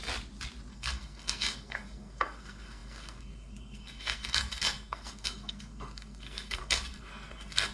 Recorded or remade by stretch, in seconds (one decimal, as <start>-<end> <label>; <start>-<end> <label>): 0.0-0.7 recorded; 0.7-7.7 remade